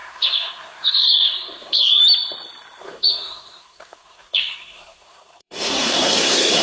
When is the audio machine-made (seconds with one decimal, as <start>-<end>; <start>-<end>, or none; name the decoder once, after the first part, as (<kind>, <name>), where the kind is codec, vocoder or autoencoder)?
0.0-2.0 (codec, SNAC); 2.8-6.6